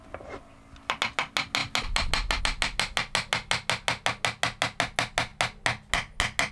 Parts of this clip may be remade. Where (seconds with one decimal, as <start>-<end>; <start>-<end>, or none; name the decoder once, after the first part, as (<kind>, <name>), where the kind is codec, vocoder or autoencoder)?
none